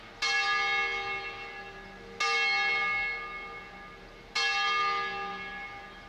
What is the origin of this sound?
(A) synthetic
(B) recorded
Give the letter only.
B